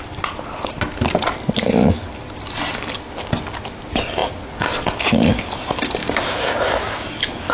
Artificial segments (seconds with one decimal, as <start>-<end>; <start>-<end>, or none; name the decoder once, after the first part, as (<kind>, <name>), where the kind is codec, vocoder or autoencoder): 6.0-6.6 (codec, DAC)